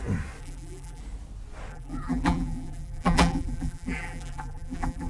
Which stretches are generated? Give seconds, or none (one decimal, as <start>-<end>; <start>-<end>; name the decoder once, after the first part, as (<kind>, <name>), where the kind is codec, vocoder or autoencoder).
0.4-1.0 (vocoder, BigVGAN v2); 1.7-5.1